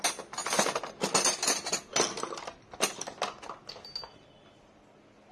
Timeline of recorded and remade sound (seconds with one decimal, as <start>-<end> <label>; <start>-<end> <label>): 0.0-5.3 recorded